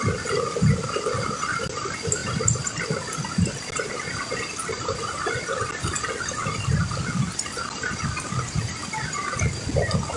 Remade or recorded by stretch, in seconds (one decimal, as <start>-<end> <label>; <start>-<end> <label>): 0.0-10.2 recorded